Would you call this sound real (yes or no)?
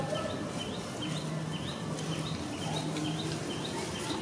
yes